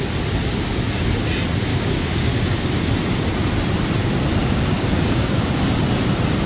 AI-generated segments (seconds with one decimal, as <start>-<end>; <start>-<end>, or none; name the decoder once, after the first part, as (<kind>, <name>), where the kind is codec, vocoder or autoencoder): 1.7-2.3 (codec, DAC); 4.4-5.6